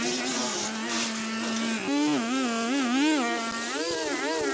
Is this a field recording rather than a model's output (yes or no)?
yes